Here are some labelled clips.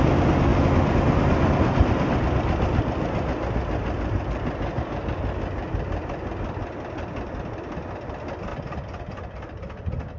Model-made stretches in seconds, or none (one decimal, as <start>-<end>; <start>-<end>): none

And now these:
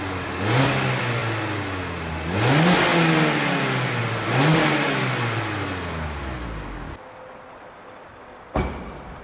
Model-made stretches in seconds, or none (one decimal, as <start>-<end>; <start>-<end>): none

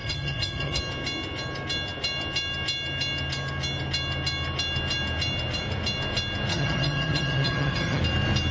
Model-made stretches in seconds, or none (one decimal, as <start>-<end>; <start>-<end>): 0.0-0.8; 6.5-8.0

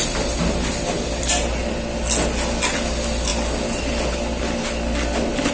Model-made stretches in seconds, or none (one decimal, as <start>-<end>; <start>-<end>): none

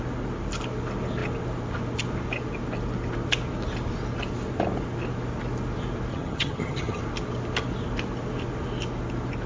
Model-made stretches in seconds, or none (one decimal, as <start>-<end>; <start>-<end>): 6.1-7.0